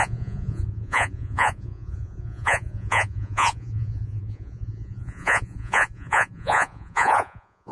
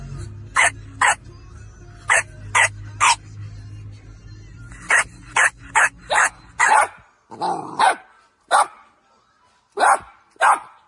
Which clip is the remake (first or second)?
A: first